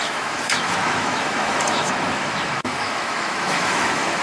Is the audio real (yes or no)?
no